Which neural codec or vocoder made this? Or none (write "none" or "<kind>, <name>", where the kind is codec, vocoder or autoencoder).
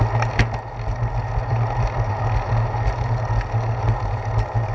none